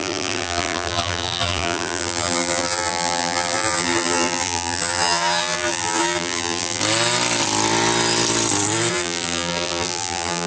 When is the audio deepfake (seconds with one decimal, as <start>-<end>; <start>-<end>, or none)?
0.0-6.8; 8.9-10.5